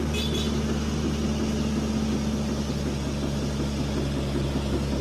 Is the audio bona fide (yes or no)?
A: yes